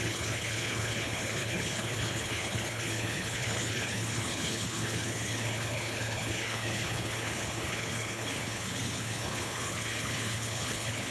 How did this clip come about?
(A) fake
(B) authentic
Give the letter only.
A